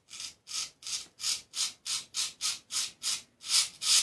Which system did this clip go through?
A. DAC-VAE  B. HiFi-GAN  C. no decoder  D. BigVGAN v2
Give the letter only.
C